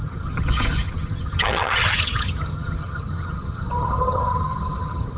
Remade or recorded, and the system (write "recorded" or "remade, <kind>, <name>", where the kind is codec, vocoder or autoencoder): remade, vocoder, HiFi-GAN